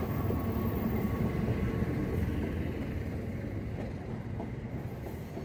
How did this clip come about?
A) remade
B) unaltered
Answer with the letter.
B